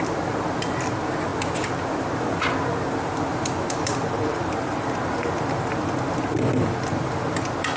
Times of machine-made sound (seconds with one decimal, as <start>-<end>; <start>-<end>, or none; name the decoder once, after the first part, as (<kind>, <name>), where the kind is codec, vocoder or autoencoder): none